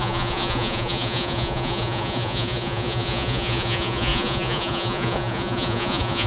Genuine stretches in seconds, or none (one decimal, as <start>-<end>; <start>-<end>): none